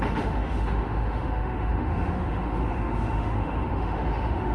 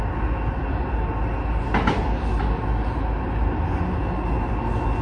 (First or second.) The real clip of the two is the second